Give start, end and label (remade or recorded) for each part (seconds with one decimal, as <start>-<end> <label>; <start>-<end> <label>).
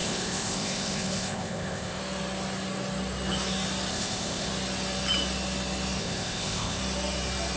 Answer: 0.0-2.0 remade; 2.0-3.9 recorded; 3.9-4.5 remade; 4.5-6.0 recorded; 6.0-6.8 remade; 6.8-7.6 recorded